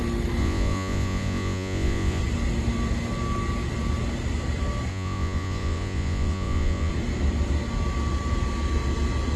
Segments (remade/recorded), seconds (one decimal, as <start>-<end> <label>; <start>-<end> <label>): 0.0-0.4 recorded; 0.4-2.2 remade; 2.2-4.9 recorded; 4.9-6.9 remade; 6.9-9.4 recorded